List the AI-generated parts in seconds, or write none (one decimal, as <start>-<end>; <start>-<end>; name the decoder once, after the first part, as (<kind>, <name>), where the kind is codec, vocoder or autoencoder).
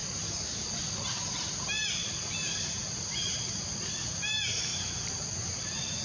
none